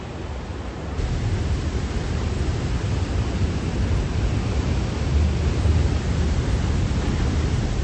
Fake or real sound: real